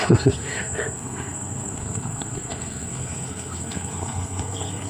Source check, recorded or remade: remade